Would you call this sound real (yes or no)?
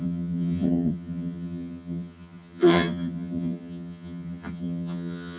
no